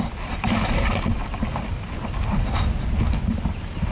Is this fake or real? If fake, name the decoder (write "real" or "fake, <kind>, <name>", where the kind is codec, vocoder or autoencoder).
real